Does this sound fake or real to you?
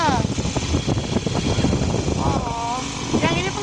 real